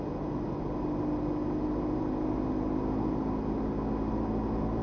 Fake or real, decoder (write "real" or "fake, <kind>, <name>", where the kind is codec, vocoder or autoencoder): real